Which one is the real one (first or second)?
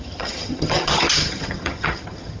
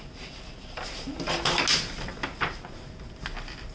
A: second